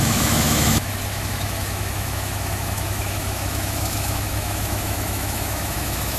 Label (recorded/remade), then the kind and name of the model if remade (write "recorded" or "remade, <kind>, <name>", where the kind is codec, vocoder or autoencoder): remade, autoencoder, DAC-VAE